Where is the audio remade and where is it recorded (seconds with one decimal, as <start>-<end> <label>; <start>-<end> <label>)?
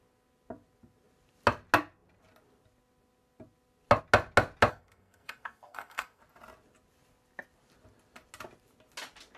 0.0-4.7 recorded; 4.7-6.2 remade; 6.2-9.4 recorded